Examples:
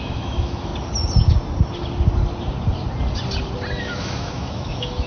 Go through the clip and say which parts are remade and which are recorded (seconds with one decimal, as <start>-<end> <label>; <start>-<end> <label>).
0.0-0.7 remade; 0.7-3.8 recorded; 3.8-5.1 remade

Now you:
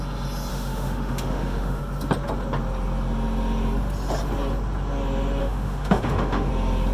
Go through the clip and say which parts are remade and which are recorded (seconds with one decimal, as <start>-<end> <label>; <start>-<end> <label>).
0.0-0.5 recorded; 0.5-1.8 remade; 1.8-5.4 recorded; 5.4-6.5 remade; 6.5-6.9 recorded

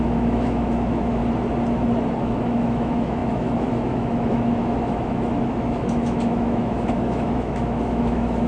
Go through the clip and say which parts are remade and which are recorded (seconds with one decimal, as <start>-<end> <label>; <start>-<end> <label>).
0.0-1.2 remade; 1.2-2.2 recorded; 2.2-8.5 remade